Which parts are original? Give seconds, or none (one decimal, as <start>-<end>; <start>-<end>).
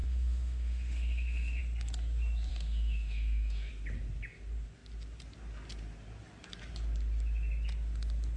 1.6-2.5; 3.7-8.4